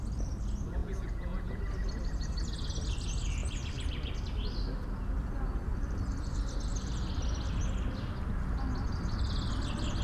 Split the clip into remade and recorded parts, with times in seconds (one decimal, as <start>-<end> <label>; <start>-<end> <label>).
0.0-0.8 recorded; 0.8-1.6 remade; 1.6-10.0 recorded